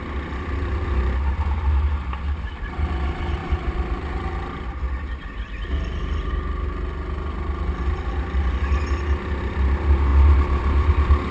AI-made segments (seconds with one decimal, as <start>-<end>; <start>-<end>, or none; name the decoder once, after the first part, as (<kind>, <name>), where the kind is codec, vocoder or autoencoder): 3.4-6.3 (vocoder, BigVGAN v2); 10.1-10.9